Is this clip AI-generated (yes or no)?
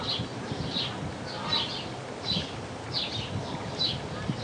no